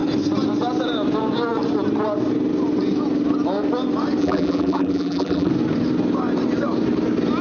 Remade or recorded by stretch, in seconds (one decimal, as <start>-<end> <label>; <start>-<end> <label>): 0.0-4.2 recorded; 4.2-5.5 remade; 5.5-7.4 recorded